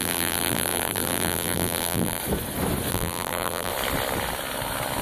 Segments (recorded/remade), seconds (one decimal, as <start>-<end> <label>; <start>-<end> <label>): 0.0-2.2 remade; 2.2-2.9 recorded; 2.9-3.7 remade; 3.7-5.0 recorded